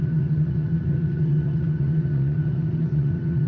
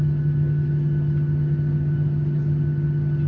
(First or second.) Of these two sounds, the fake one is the first